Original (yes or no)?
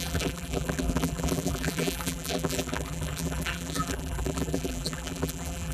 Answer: no